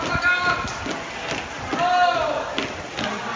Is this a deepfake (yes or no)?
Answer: no